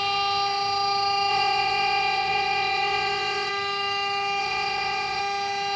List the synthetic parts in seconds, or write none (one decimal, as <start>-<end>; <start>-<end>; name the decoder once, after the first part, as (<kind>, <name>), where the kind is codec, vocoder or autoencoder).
1.3-3.5 (vocoder, WaveNeXt); 4.4-5.2